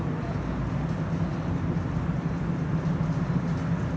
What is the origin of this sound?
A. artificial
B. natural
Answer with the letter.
B